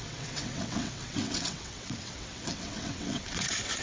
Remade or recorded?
remade